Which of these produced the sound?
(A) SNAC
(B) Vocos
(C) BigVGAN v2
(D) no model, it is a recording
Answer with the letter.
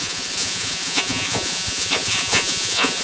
B